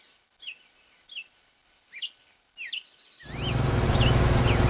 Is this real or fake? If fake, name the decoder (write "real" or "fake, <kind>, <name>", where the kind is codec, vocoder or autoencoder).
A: real